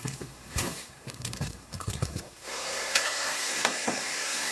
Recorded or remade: remade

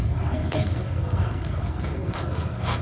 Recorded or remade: remade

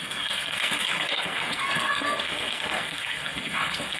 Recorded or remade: remade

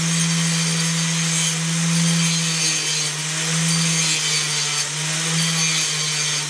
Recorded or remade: recorded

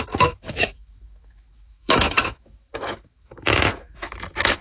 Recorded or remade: remade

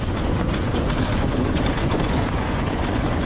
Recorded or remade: remade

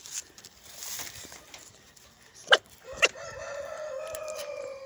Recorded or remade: remade